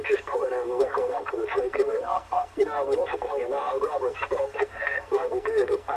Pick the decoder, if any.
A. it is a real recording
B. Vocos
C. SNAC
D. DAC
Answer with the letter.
C